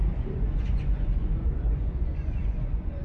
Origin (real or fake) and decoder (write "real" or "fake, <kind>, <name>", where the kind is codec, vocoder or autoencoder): fake, vocoder, Vocos